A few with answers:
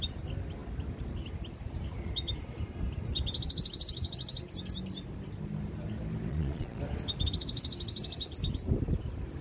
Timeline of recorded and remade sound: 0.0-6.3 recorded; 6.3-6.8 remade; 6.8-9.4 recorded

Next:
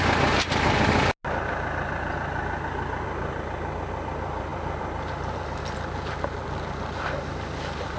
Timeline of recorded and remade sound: 0.0-8.0 recorded

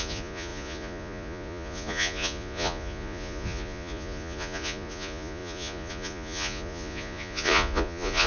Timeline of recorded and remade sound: 0.0-8.3 remade

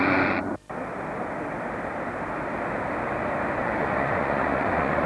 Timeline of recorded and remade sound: 0.0-0.5 remade; 0.5-3.6 recorded; 3.6-5.1 remade